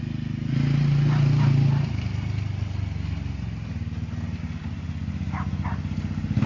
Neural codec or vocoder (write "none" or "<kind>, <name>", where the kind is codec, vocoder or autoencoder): none